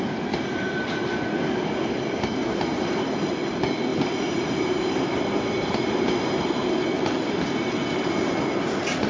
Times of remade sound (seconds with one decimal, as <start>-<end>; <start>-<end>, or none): 2.4-3.4; 3.9-5.2

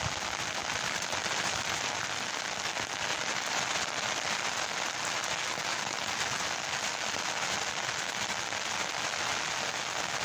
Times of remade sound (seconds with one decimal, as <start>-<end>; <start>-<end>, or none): 0.6-1.9; 3.1-4.5

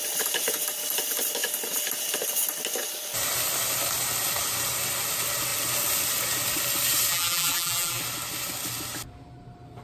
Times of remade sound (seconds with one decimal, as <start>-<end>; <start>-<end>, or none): 7.1-8.0